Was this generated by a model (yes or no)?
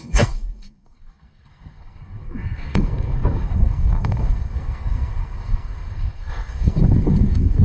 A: yes